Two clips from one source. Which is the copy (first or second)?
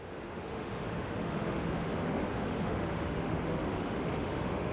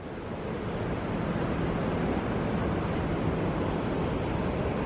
first